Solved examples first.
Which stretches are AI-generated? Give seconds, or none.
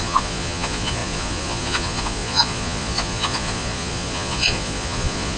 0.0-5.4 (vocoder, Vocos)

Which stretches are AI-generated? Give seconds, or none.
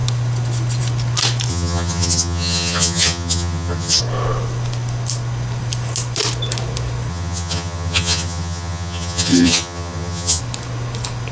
1.5-4.0 (vocoder, HiFi-GAN); 7.1-10.4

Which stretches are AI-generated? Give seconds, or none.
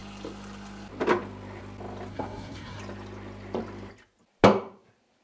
2.1-2.8 (codec, SNAC)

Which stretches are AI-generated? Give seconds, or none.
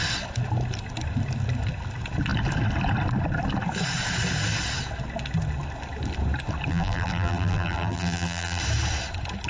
6.7-8.6 (vocoder, BigVGAN v2)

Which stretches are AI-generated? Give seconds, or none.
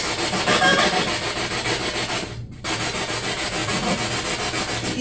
3.6-4.1 (vocoder, Vocos)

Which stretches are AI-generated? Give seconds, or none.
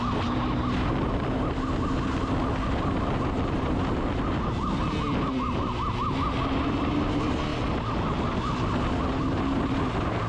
none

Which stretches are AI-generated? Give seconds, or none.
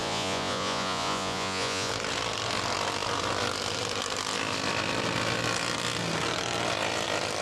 0.0-1.9 (vocoder, Vocos)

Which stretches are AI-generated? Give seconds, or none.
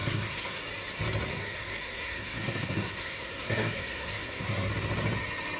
0.0-0.6 (codec, SNAC); 1.3-4.7